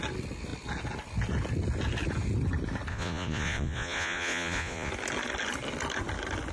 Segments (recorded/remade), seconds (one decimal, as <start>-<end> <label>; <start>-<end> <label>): 0.0-2.9 recorded; 2.9-4.9 remade; 4.9-6.5 recorded